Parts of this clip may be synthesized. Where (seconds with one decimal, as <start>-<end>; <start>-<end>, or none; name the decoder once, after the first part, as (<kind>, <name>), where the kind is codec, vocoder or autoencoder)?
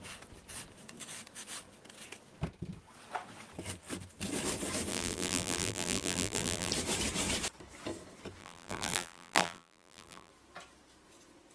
4.9-6.7 (vocoder, BigVGAN v2); 8.4-10.3